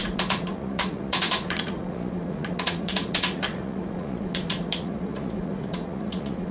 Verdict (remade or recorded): remade